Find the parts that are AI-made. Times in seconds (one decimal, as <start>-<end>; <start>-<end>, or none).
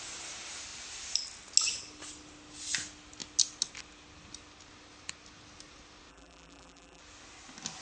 6.1-7.0